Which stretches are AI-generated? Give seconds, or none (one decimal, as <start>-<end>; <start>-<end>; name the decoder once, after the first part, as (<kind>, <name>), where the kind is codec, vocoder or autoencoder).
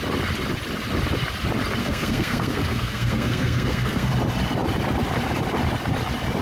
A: 1.8-4.1 (codec, SNAC)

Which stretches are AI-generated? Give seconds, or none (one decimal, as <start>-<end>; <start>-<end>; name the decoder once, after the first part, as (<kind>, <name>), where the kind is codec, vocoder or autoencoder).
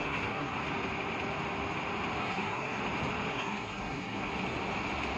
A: 0.0-0.6 (codec, SNAC); 2.2-2.8; 3.3-4.3